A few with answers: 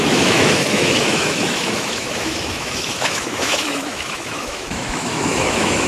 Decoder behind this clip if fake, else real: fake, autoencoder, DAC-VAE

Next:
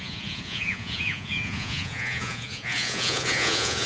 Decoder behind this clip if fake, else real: fake, vocoder, Vocos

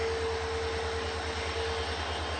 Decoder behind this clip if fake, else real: real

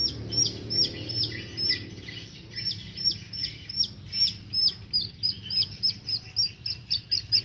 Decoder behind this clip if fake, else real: real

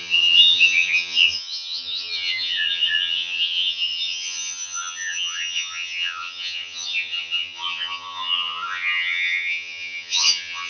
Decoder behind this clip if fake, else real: fake, vocoder, HiFi-GAN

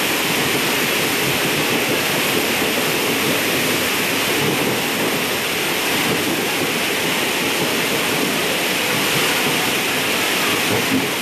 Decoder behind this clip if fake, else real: real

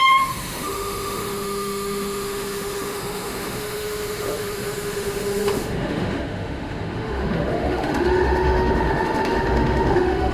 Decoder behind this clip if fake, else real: fake, autoencoder, DAC-VAE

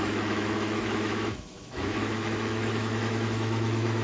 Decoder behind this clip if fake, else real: fake, autoencoder, DAC-VAE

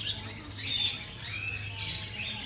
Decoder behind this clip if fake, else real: real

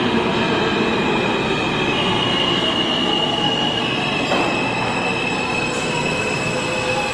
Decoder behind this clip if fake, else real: real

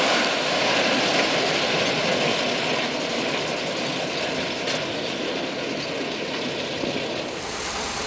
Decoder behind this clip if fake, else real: real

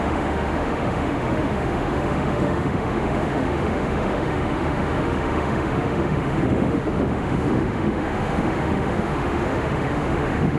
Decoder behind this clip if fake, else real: fake, autoencoder, DAC-VAE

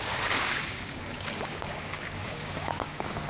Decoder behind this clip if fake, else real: fake, codec, DAC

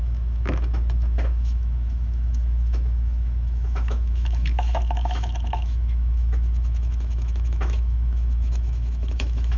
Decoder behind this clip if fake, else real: fake, autoencoder, DAC-VAE